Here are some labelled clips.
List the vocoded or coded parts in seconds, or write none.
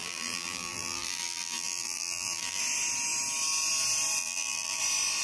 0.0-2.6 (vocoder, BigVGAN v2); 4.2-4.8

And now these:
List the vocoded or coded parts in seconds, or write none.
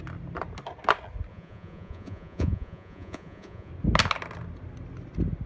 1.3-3.7 (vocoder, Vocos)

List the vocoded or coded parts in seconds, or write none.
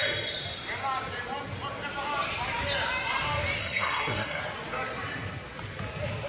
3.6-4.4 (codec, SNAC)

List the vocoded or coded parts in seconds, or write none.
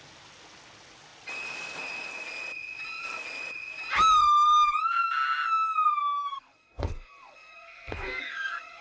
6.3-8.8 (codec, SNAC)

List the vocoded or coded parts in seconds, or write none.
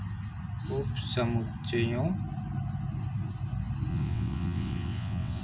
3.9-5.4 (vocoder, WaveNeXt)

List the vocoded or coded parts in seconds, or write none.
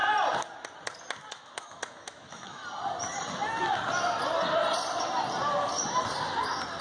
1.3-2.6 (autoencoder, DAC-VAE)